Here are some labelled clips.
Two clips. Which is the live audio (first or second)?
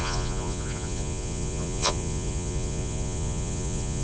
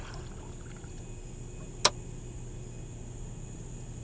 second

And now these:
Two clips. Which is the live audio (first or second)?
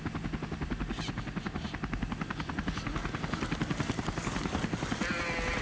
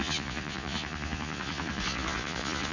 first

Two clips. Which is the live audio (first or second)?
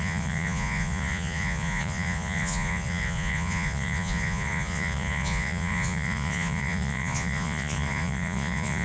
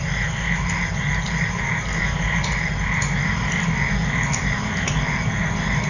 second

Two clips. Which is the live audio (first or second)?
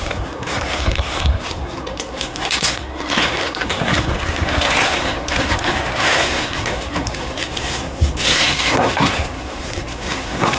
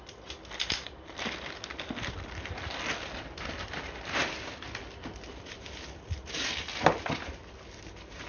second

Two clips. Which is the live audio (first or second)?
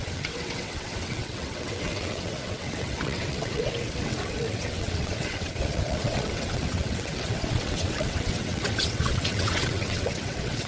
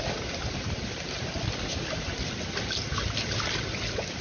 second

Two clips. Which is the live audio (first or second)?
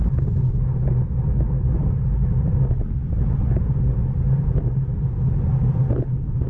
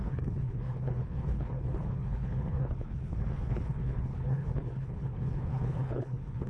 first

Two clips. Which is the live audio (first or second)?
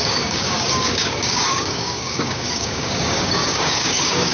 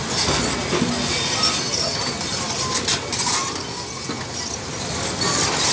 second